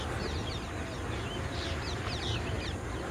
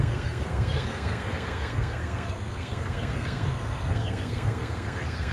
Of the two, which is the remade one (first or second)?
second